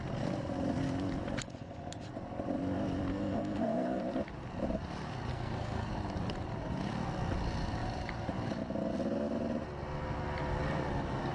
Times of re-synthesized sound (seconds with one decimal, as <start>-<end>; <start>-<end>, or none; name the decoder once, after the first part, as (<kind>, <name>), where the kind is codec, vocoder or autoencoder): 3.1-4.0 (codec, SNAC); 5.3-5.9